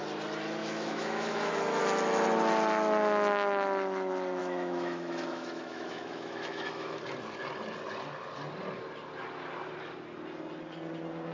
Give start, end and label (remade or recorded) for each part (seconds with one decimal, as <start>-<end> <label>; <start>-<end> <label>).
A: 0.0-0.6 recorded; 0.6-1.8 remade; 1.8-4.4 recorded; 4.4-7.0 remade; 7.0-11.3 recorded